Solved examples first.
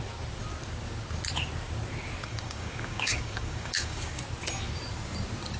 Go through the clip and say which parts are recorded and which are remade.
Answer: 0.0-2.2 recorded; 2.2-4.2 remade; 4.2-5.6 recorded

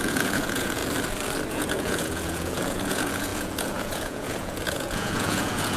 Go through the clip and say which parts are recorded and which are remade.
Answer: 0.0-0.8 remade; 0.8-1.5 recorded; 1.5-5.8 remade